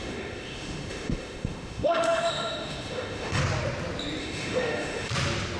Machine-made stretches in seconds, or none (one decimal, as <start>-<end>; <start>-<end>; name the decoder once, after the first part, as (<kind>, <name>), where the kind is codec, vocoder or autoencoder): 0.0-3.4 (autoencoder, DAC-VAE); 4.2-5.1